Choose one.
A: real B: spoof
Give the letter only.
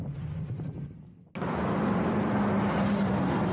A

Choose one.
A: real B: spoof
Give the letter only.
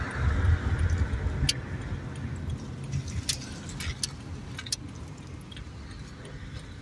A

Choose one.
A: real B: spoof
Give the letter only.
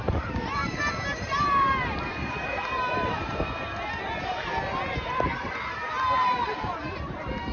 B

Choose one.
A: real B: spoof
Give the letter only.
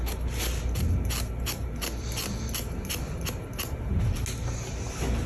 A